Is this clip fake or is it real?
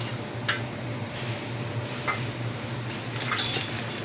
real